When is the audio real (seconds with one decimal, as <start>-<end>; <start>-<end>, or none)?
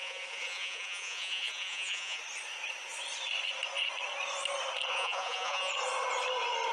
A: 2.2-4.9; 5.7-6.7